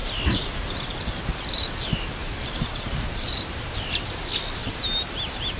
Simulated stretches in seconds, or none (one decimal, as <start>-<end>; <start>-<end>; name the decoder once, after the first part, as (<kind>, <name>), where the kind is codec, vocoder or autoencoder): 2.2-3.4 (vocoder, BigVGAN v2)